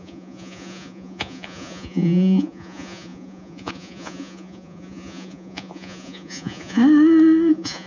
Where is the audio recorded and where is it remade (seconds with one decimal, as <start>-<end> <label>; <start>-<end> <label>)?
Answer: 0.0-6.8 remade; 6.8-7.5 recorded; 7.5-7.9 remade